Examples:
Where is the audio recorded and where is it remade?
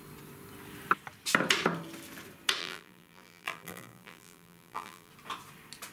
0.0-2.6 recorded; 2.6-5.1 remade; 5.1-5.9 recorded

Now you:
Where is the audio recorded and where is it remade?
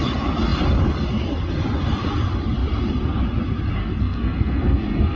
0.0-3.8 recorded; 3.8-5.2 remade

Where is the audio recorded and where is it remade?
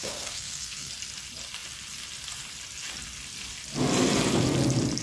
0.0-0.9 remade; 0.9-5.0 recorded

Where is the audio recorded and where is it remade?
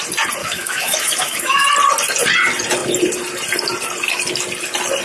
0.0-0.4 recorded; 0.4-1.7 remade; 1.7-5.0 recorded